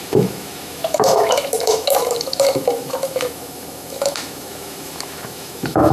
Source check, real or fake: fake